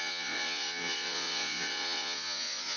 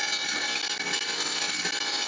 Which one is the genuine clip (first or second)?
second